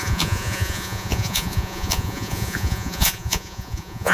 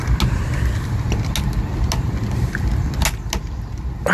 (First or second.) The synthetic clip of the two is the first